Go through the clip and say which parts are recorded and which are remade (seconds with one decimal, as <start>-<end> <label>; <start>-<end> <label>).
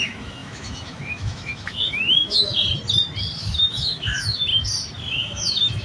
0.0-2.6 remade; 2.6-3.4 recorded; 3.4-4.5 remade; 4.5-5.1 recorded; 5.1-5.8 remade